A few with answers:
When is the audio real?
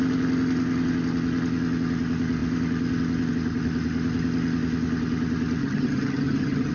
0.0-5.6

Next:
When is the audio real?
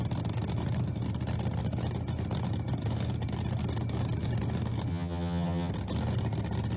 0.0-4.9; 5.7-6.8